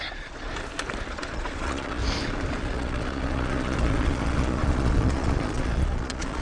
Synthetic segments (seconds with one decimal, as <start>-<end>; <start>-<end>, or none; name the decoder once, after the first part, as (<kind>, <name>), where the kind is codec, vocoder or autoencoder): 0.0-0.5 (vocoder, Vocos); 1.1-2.0; 2.6-6.4